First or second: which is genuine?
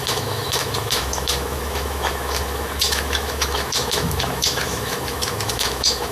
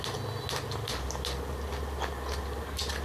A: second